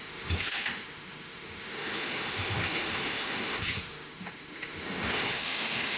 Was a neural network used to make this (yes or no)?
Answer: yes